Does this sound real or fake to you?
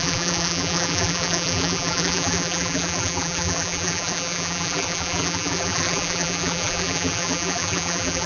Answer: fake